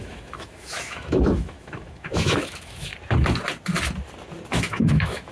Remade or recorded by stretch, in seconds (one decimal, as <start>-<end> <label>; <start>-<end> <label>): 0.0-2.9 remade; 2.9-4.5 recorded; 4.5-5.3 remade